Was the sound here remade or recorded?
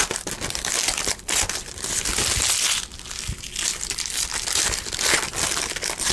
recorded